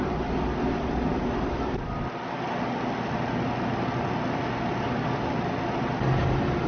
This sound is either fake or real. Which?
real